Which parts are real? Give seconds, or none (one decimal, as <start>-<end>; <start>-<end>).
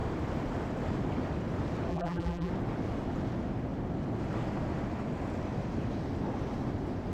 0.0-1.9; 2.5-7.1